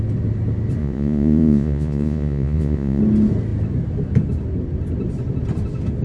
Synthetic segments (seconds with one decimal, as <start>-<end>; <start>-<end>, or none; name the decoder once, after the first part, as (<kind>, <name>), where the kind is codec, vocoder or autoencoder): 0.8-3.0 (vocoder, Vocos)